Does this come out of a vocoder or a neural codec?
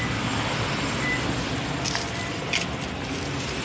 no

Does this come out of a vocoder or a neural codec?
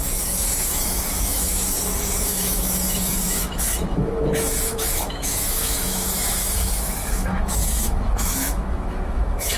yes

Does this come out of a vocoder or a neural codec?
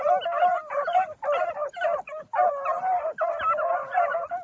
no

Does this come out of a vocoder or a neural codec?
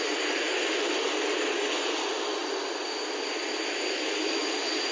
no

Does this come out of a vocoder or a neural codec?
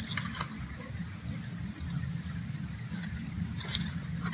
no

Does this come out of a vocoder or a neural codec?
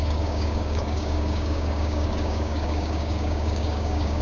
yes